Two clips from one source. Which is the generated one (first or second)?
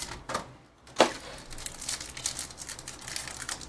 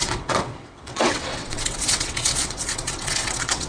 second